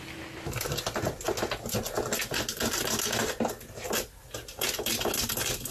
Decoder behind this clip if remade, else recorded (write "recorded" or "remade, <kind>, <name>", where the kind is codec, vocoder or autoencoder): recorded